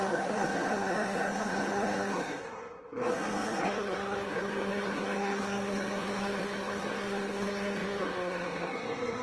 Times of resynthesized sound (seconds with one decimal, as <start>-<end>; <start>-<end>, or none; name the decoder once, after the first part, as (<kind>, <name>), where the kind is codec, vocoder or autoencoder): 0.0-9.2 (codec, SNAC)